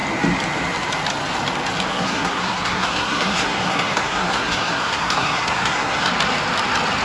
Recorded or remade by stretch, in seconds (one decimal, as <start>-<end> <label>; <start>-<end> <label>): 0.0-1.9 recorded; 1.9-6.1 remade; 6.1-7.0 recorded